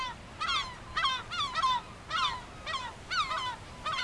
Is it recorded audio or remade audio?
recorded